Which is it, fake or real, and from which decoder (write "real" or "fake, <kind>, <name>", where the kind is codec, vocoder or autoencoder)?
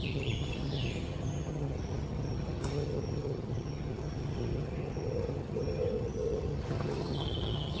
fake, vocoder, HiFi-GAN